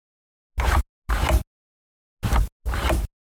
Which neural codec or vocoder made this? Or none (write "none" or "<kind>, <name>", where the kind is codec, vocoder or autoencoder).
none